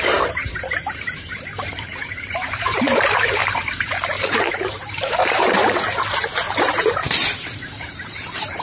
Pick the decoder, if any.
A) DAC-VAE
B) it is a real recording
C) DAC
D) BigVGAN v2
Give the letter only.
D